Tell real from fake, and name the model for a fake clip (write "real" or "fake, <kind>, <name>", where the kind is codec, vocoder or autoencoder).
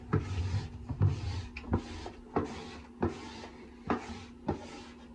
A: real